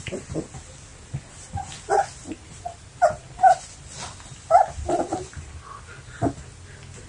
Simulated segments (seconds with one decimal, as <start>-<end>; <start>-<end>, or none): none